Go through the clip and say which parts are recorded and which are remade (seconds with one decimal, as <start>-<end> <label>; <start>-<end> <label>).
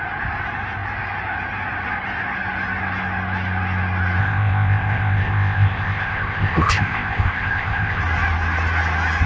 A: 0.0-4.2 recorded; 4.2-8.0 remade; 8.0-9.3 recorded